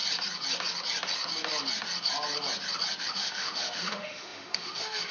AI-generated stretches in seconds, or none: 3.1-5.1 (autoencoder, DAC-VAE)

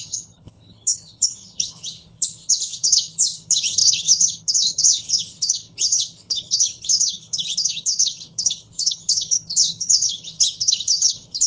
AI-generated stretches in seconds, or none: 0.0-11.5 (codec, HILCodec)